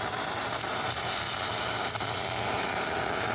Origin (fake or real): fake